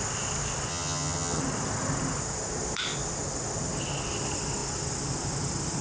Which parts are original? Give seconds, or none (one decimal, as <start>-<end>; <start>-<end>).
0.0-0.7; 1.4-5.8